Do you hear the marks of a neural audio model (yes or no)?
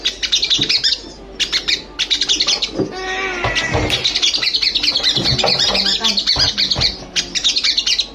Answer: no